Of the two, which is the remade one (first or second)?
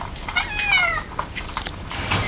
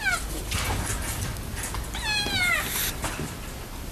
first